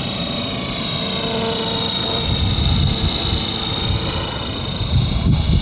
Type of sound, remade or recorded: recorded